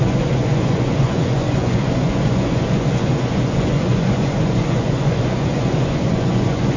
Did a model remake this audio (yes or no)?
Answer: yes